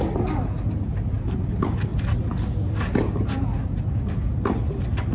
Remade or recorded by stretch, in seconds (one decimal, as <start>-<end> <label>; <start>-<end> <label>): 0.0-5.1 recorded

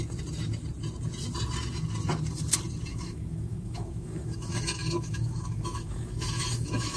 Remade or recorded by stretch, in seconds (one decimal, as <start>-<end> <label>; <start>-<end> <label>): 0.0-2.9 recorded; 2.9-7.0 remade

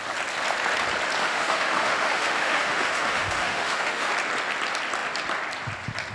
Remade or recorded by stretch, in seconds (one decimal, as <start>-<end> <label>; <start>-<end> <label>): 0.0-1.2 recorded; 1.2-4.1 remade; 4.1-6.1 recorded

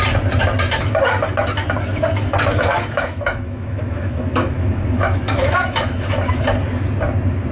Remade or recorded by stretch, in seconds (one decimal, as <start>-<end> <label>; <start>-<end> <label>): 0.0-1.9 recorded; 1.9-6.4 remade; 6.4-7.5 recorded

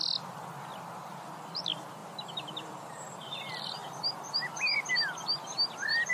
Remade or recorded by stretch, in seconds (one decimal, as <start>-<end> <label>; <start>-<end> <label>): 0.0-6.1 recorded